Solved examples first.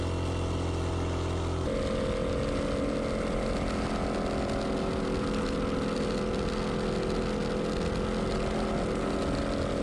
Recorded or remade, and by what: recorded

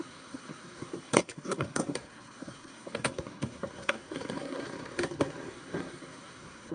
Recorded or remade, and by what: remade, codec, SNAC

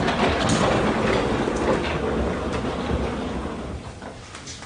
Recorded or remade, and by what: recorded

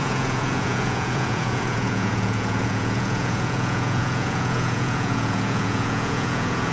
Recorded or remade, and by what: remade, vocoder, Vocos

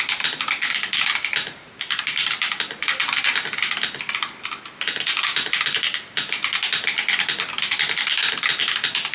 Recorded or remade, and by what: recorded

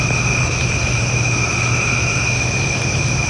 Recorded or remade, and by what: recorded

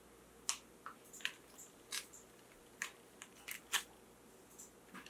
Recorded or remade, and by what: recorded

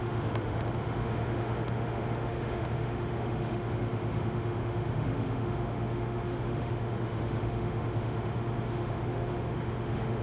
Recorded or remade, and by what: remade, autoencoder, DAC-VAE